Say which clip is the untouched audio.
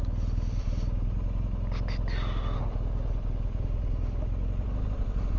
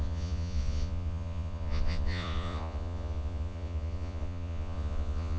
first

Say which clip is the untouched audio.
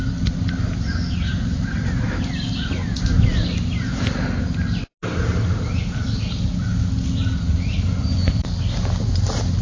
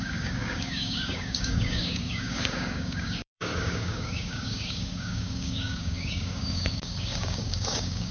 first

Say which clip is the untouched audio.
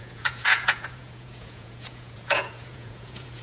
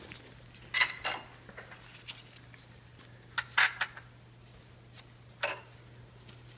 second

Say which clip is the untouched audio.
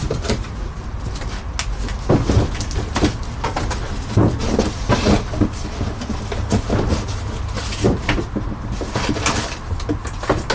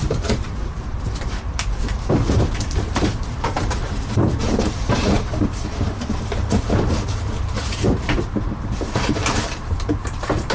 first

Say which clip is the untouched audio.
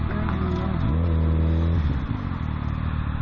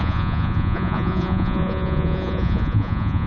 first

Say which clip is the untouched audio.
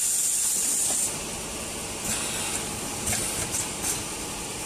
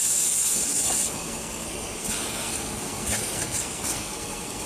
first